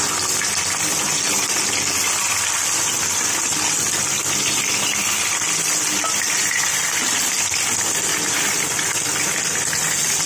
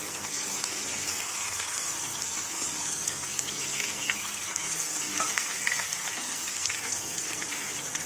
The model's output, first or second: second